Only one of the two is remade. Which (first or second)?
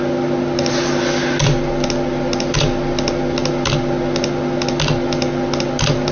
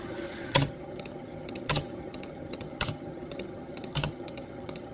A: second